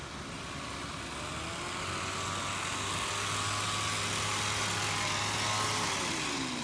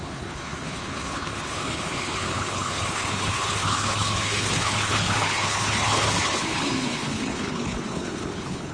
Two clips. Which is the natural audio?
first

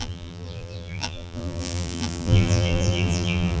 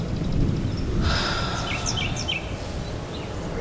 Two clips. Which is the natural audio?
second